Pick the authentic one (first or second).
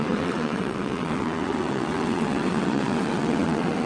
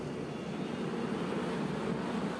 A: second